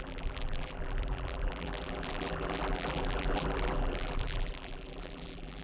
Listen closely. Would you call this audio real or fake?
fake